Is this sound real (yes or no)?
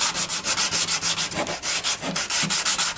yes